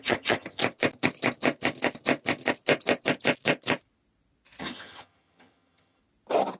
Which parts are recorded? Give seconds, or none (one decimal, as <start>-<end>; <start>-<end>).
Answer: 0.6-4.6; 6.0-6.6